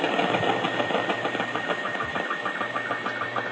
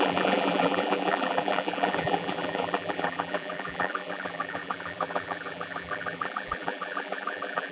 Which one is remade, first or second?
second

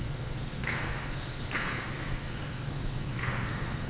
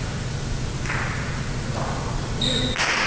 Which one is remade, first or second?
first